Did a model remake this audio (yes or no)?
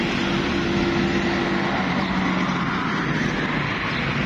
no